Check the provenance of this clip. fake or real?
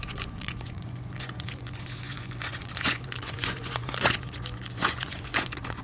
fake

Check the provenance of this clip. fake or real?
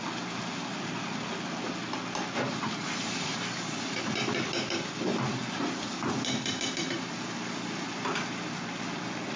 real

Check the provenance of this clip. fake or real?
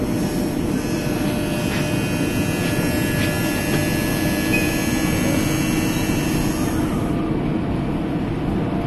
real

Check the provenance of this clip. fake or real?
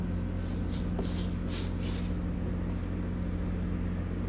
real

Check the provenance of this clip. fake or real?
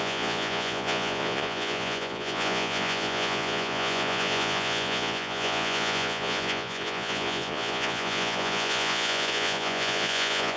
fake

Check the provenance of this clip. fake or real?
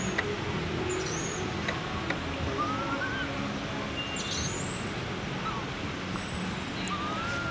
real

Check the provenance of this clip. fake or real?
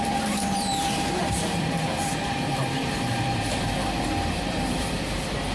fake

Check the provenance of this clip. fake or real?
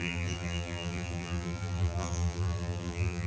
fake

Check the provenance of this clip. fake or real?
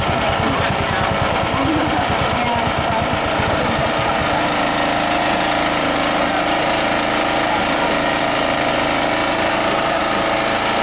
real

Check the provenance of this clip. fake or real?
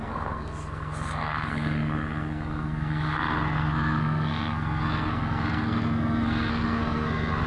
fake